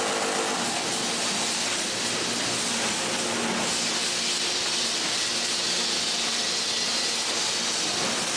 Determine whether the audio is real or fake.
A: real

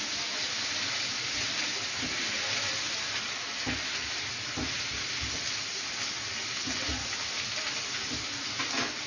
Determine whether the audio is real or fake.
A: real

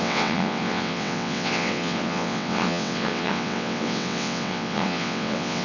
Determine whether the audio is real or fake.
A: fake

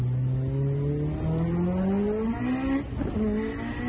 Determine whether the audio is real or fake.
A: real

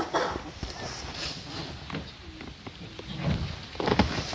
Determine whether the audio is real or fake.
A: real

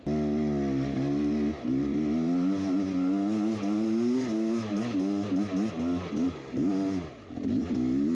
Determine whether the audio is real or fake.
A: real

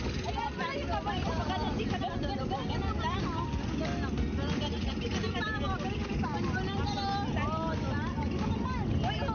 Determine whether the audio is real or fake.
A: real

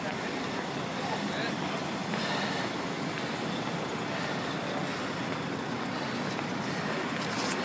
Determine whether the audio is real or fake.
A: real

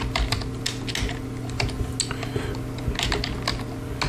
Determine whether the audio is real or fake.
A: real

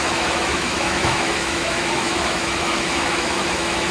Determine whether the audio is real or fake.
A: fake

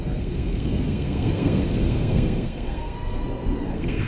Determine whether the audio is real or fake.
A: fake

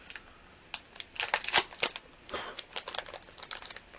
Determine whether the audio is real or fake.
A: real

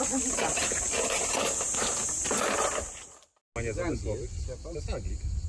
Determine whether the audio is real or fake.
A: real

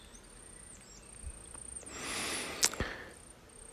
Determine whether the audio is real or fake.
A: real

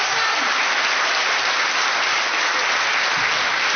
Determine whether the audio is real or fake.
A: real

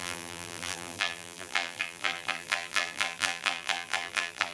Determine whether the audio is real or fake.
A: fake